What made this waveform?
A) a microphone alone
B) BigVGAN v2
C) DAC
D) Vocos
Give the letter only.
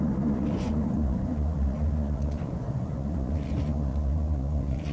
D